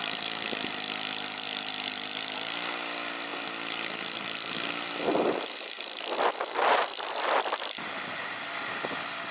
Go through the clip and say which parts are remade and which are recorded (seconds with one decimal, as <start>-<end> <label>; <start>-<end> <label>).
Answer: 0.0-9.3 recorded